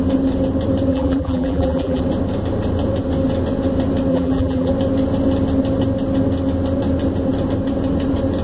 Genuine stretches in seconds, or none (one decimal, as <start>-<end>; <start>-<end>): 0.0-0.9; 2.0-4.1; 4.7-8.4